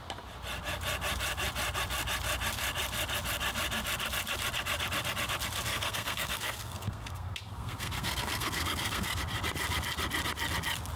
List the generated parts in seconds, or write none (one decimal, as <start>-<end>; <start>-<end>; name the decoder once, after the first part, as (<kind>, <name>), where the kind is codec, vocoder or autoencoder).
5.7-9.2 (codec, SNAC)